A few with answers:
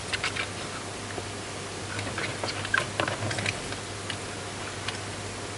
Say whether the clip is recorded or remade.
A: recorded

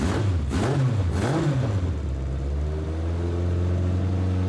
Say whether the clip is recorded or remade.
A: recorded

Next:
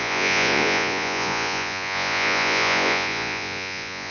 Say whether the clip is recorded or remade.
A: remade